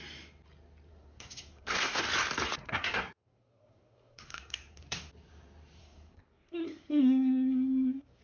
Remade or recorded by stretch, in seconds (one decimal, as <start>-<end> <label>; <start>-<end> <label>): 0.0-0.9 recorded; 0.9-2.0 remade; 2.0-2.6 recorded; 2.6-5.1 remade; 5.1-5.8 recorded; 5.8-8.2 remade